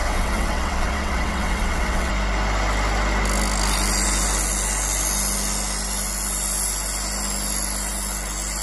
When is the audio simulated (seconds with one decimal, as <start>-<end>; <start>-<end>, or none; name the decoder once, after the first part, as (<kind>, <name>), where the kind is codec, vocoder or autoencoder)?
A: 0.0-2.1 (vocoder, WaveNeXt)